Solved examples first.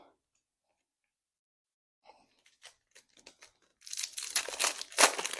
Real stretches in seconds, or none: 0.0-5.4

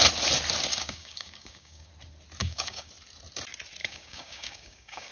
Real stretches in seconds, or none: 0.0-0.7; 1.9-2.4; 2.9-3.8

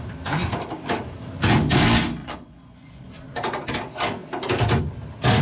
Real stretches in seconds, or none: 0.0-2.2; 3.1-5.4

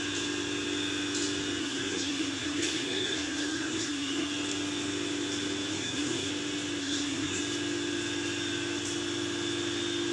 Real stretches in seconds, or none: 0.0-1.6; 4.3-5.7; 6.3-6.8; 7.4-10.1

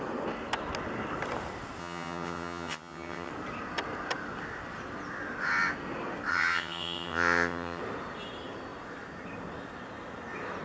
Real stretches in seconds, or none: 0.0-1.8; 3.3-6.3; 7.8-10.6